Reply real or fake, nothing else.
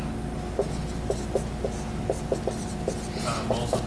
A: real